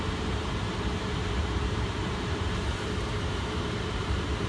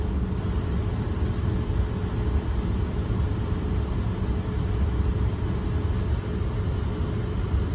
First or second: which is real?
second